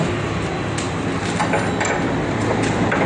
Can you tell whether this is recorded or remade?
recorded